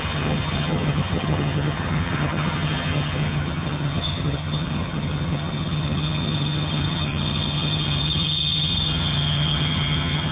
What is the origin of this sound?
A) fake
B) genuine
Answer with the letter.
A